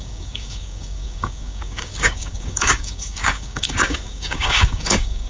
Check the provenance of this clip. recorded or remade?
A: remade